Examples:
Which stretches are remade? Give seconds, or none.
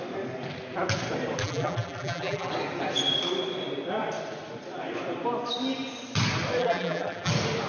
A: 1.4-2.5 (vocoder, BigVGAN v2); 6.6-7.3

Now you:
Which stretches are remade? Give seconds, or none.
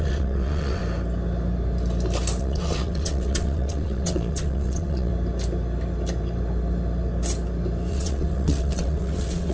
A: 0.0-0.8 (vocoder, WaveNeXt); 2.4-5.1; 7.9-9.5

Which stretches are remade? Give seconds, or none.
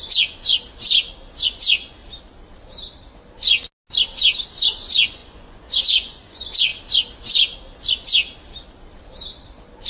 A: 0.0-0.5 (vocoder, Vocos); 1.3-2.0; 4.5-6.7